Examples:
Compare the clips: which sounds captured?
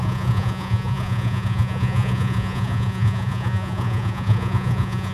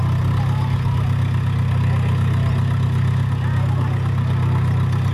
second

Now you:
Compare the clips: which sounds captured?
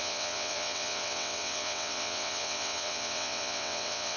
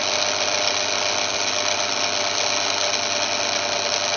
second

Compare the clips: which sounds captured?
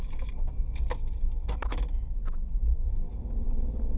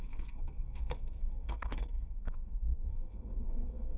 first